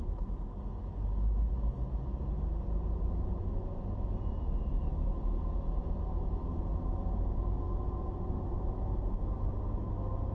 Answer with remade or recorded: recorded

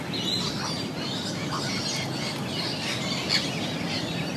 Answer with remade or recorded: recorded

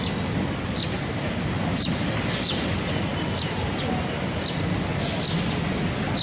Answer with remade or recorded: recorded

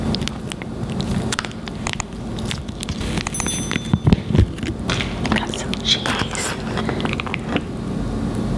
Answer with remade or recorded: recorded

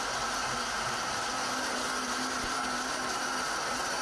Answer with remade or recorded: recorded